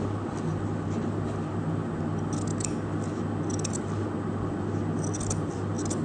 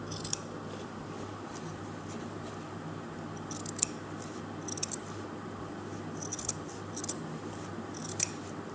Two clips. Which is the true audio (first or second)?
first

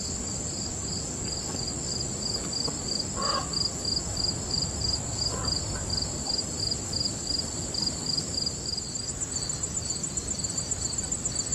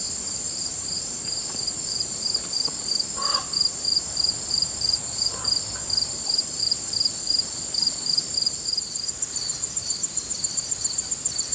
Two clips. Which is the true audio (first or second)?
first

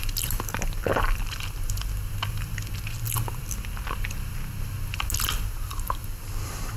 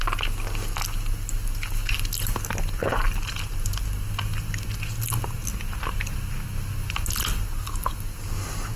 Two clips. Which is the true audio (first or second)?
second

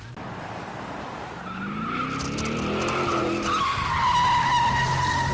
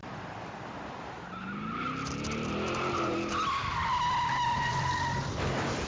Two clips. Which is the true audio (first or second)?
first